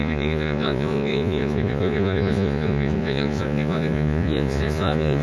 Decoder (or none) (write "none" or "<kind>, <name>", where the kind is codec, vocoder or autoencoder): vocoder, Vocos